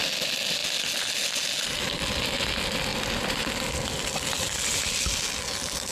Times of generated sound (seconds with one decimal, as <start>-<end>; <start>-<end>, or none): 2.9-4.3